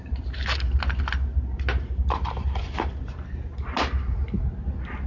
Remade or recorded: recorded